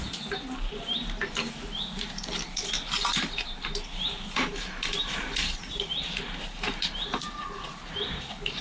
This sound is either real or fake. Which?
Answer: fake